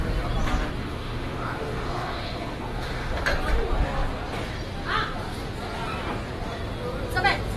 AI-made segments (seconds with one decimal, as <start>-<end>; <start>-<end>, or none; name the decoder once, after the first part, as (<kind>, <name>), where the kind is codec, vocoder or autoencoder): 0.8-3.2 (autoencoder, DAC-VAE)